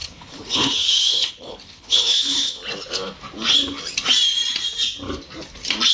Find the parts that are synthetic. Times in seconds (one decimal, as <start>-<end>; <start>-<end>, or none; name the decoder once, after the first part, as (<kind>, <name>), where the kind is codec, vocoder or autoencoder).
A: 0.0-2.6 (codec, HILCodec)